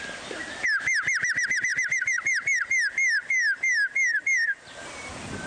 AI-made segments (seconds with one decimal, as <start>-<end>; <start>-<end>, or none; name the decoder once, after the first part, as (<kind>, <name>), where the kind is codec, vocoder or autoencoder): none